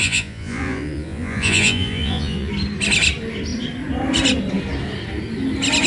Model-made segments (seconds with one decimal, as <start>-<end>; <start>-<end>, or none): 0.0-2.5